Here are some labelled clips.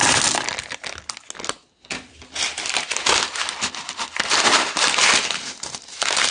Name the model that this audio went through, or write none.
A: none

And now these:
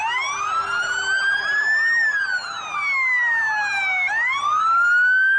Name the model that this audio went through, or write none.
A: none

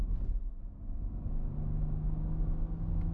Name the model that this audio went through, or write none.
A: none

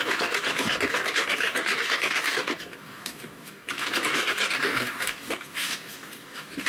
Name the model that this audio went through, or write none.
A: codec, DAC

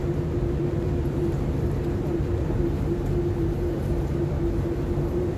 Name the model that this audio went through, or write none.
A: vocoder, BigVGAN v2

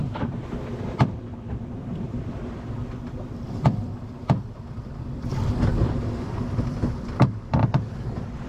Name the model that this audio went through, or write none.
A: vocoder, BigVGAN v2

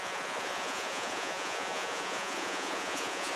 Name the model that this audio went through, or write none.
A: vocoder, Vocos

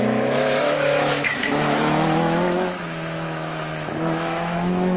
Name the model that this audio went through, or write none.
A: autoencoder, DAC-VAE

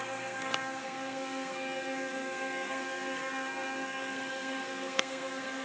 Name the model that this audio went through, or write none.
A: codec, SNAC